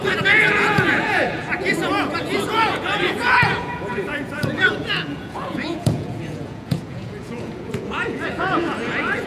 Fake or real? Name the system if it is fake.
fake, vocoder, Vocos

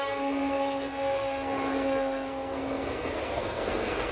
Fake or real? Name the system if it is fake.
fake, codec, SNAC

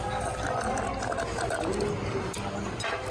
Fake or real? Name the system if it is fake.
real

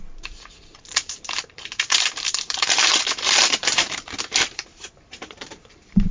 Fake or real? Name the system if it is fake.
fake, vocoder, BigVGAN v2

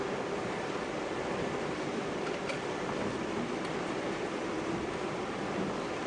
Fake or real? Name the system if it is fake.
fake, vocoder, BigVGAN v2